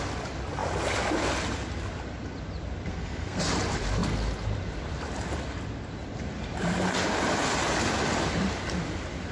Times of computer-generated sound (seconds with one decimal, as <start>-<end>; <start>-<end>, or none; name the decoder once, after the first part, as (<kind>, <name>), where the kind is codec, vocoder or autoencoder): 2.9-3.4 (codec, SNAC)